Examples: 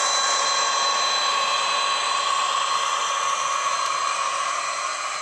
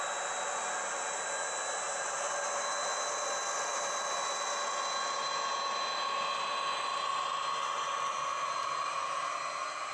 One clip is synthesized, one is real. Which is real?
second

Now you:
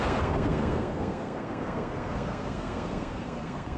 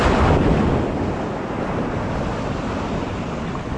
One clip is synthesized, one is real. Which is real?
second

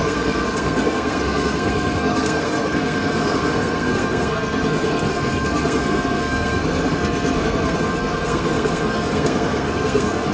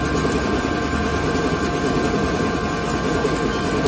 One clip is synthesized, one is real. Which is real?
second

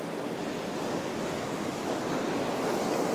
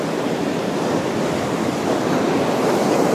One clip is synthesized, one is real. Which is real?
first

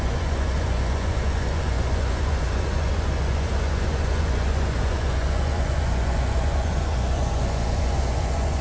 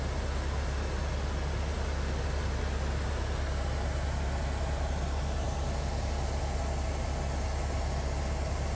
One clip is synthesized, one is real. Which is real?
second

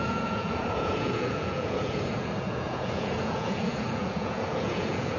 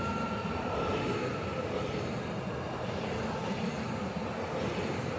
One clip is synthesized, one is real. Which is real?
second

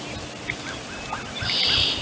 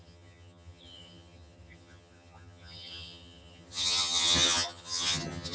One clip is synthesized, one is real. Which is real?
first